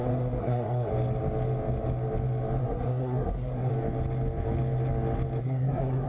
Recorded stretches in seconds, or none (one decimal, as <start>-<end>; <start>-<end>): 0.9-2.6; 3.7-5.4